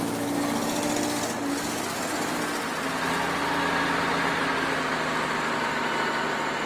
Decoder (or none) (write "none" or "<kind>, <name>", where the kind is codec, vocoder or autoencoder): none